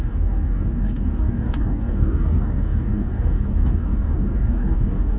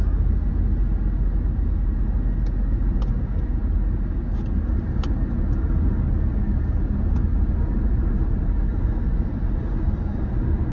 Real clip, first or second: second